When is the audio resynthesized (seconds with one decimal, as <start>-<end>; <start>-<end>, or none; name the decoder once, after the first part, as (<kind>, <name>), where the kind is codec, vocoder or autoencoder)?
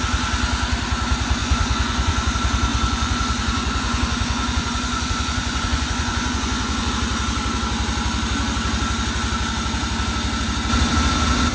1.4-2.3 (vocoder, Vocos); 2.7-6.9